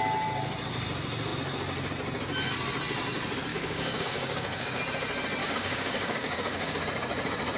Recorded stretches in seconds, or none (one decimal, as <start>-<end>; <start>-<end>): 0.0-3.5; 4.8-5.4; 6.8-7.6